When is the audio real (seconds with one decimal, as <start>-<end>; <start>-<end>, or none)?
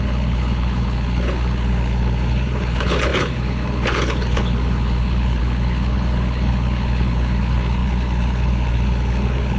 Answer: none